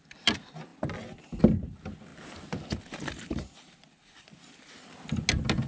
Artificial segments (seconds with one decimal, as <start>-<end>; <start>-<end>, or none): none